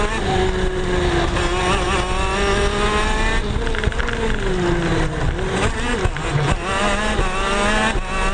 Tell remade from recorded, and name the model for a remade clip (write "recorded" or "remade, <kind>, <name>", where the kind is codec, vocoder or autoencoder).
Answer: recorded